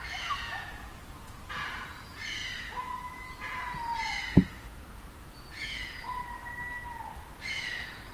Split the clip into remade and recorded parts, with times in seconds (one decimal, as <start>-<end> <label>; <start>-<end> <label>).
0.0-2.4 remade; 2.4-3.2 recorded; 3.2-6.2 remade; 6.2-7.6 recorded; 7.6-8.1 remade